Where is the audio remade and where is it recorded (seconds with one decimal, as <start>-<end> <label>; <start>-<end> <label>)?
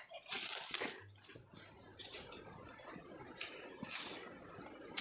0.0-1.5 recorded; 1.5-3.9 remade; 3.9-5.0 recorded